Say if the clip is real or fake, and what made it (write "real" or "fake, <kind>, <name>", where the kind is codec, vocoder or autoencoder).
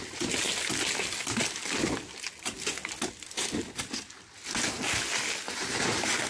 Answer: real